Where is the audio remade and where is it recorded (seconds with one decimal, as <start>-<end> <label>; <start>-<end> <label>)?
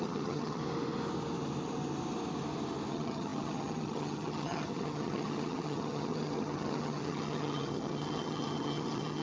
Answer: 0.0-0.6 remade; 0.6-2.9 recorded; 2.9-9.2 remade